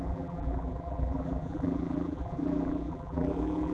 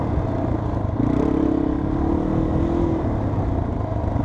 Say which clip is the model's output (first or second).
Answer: first